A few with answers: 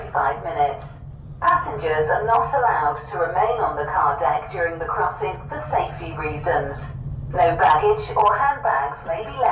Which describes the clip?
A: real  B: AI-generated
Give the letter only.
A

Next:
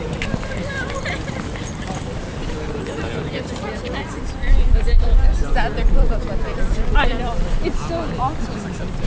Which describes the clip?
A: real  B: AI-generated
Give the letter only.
B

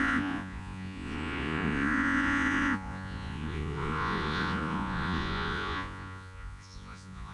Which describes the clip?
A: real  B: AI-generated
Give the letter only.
B